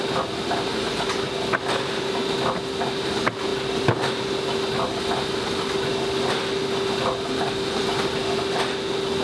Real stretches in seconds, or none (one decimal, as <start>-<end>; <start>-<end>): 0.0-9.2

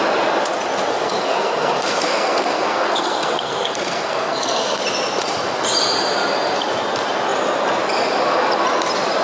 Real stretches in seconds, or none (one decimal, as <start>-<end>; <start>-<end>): 0.0-0.9; 4.8-9.2

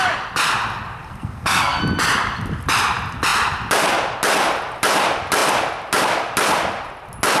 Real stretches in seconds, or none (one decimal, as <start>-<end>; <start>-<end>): 0.0-1.0; 1.8-7.4